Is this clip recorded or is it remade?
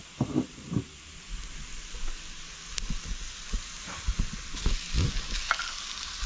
recorded